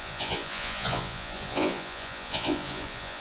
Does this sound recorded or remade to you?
remade